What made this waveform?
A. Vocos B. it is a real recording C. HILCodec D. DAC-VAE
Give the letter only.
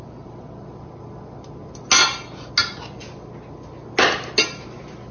B